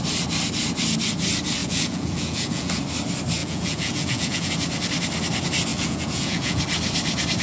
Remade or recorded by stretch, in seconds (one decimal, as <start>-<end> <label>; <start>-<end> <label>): 0.0-1.6 recorded; 1.6-2.8 remade; 2.8-3.4 recorded; 3.4-4.5 remade; 4.5-5.7 recorded; 5.7-6.6 remade; 6.6-7.4 recorded